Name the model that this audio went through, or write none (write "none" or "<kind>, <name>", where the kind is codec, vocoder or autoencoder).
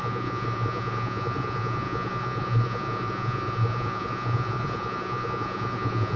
vocoder, Vocos